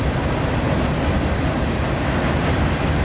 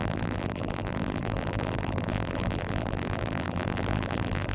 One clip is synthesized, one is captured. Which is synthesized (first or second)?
second